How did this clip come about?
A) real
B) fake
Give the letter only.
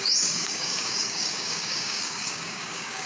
B